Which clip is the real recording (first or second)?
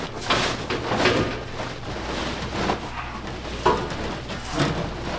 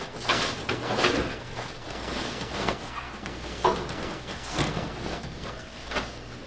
first